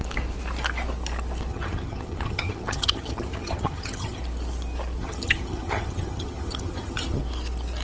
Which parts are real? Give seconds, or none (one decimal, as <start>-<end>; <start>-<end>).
0.0-1.5; 4.2-5.0; 7.2-7.8